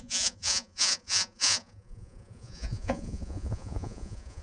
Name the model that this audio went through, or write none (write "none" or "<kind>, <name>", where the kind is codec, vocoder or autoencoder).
vocoder, Vocos